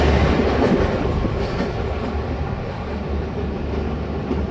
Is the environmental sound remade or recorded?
recorded